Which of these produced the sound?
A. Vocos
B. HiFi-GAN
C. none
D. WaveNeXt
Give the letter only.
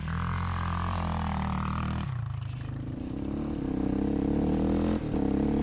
C